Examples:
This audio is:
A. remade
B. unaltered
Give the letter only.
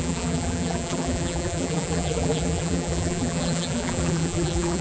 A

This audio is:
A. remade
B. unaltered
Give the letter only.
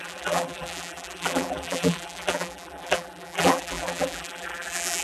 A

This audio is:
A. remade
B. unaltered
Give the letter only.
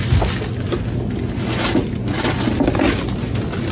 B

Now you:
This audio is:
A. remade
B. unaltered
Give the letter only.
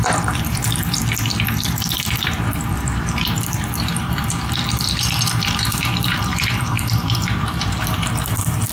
A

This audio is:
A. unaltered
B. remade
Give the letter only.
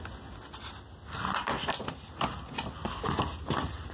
A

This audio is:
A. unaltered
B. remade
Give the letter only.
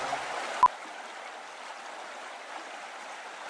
A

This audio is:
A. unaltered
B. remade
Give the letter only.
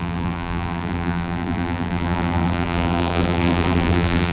B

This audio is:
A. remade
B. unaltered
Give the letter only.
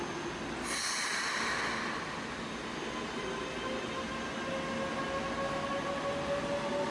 B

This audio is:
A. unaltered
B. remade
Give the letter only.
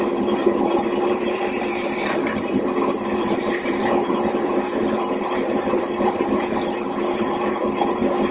B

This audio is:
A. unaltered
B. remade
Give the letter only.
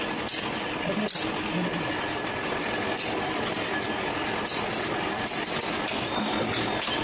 A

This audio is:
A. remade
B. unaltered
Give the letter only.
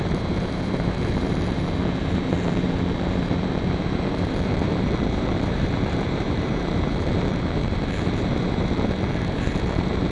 A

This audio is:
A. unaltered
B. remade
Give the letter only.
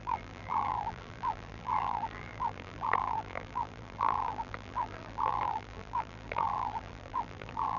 B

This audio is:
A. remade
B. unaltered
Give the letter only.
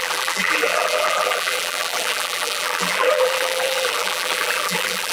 A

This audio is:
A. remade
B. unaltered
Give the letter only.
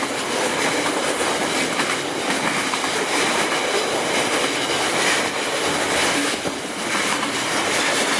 B